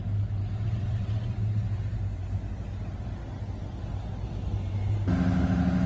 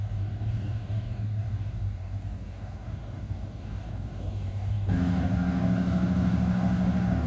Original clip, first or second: first